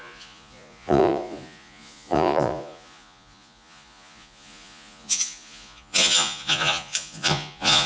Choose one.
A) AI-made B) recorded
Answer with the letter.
A